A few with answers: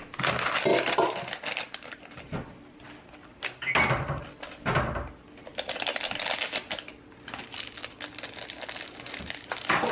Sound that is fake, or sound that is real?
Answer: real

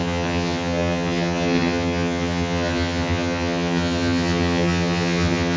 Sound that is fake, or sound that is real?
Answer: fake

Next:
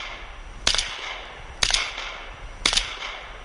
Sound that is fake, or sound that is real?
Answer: real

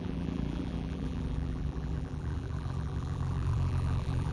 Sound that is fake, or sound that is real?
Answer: fake